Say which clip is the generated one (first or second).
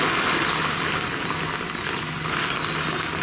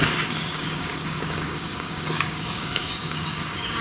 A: second